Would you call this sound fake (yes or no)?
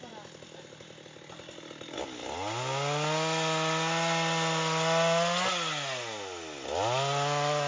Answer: no